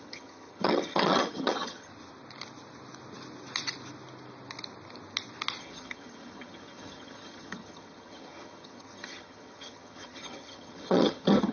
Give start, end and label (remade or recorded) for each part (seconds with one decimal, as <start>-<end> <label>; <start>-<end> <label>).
0.0-1.9 remade; 1.9-5.6 recorded; 5.6-11.5 remade